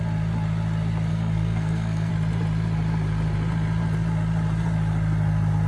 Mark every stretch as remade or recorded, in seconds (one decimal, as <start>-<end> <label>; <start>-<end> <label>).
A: 0.0-1.1 recorded; 1.1-2.1 remade; 2.1-5.7 recorded